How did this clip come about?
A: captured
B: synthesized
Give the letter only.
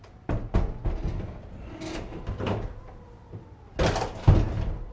A